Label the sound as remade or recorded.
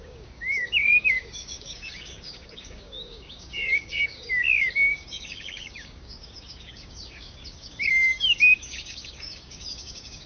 remade